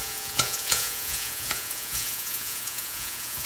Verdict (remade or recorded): remade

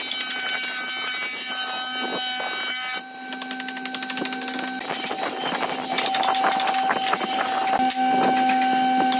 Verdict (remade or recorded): recorded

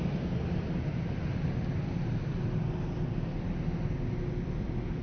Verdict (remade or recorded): recorded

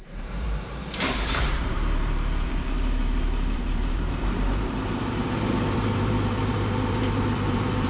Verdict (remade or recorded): remade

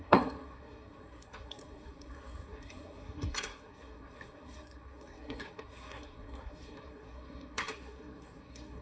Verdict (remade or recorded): remade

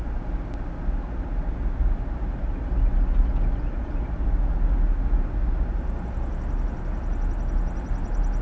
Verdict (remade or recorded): recorded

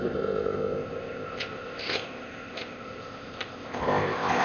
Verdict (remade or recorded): remade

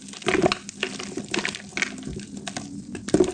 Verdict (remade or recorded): recorded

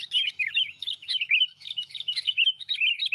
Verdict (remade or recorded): remade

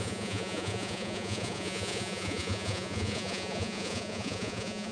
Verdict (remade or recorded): remade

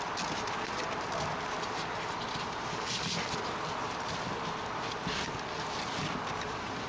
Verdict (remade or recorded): recorded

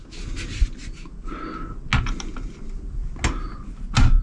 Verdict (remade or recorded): recorded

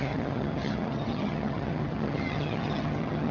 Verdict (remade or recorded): remade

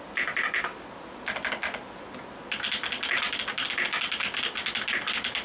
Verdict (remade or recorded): recorded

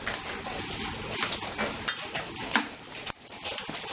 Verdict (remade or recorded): recorded